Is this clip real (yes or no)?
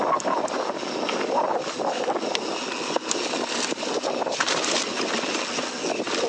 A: yes